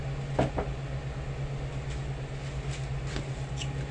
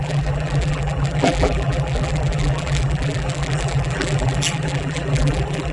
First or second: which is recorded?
first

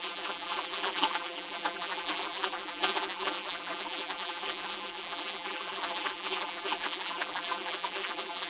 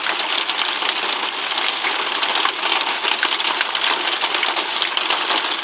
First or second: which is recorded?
second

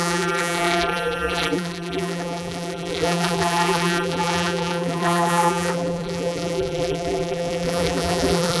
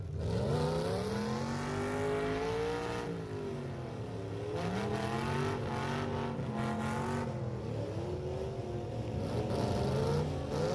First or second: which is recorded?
second